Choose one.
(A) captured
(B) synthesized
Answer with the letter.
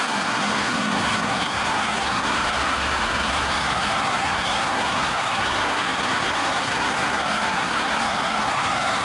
B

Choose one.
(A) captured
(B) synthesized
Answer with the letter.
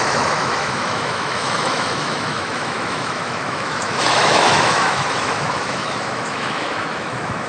B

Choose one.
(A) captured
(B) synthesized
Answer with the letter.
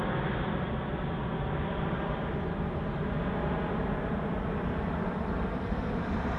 A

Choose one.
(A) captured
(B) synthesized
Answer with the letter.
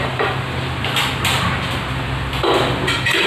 B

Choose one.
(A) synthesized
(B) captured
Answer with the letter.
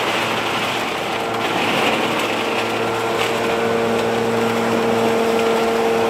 B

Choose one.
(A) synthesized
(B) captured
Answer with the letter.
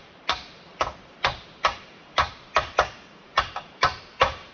A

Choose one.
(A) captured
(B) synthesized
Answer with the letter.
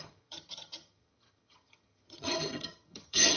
B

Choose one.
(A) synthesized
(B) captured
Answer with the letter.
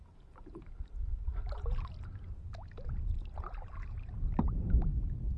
B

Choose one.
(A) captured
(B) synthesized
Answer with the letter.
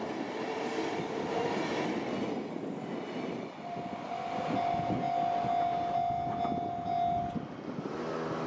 A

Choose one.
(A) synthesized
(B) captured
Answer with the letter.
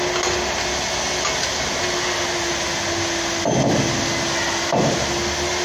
B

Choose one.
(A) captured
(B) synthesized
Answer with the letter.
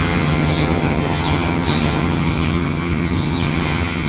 B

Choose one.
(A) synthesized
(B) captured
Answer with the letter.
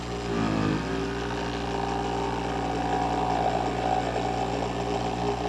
B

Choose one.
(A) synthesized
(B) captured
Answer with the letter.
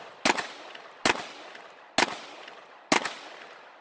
B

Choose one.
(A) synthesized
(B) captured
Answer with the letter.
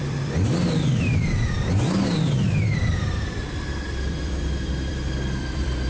A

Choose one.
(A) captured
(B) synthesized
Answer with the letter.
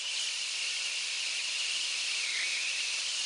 A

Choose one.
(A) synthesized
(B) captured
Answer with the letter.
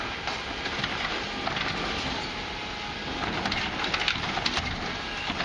B